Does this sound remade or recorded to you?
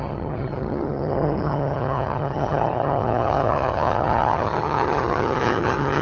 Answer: remade